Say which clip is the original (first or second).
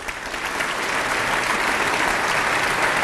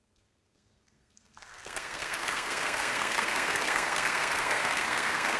first